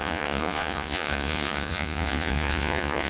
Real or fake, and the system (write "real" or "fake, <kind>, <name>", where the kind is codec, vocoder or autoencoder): fake, vocoder, Vocos